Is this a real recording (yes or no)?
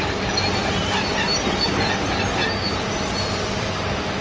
yes